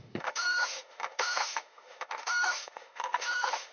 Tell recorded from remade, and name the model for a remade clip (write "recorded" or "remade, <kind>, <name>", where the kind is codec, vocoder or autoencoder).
remade, autoencoder, DAC-VAE